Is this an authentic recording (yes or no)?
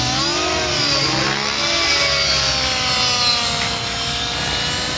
yes